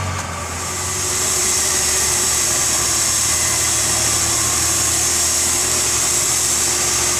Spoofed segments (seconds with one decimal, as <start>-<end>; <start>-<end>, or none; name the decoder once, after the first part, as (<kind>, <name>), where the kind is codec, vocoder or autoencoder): 1.4-4.6 (vocoder, BigVGAN v2); 5.6-6.6